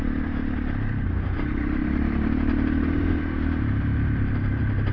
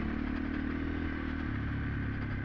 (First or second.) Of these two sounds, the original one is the second